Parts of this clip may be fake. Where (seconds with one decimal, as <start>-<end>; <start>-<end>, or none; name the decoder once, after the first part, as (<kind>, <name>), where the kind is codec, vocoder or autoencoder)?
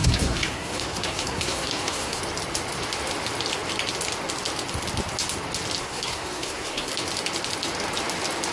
0.0-2.2 (codec, SNAC); 5.8-6.9